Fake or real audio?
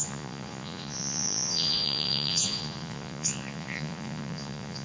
fake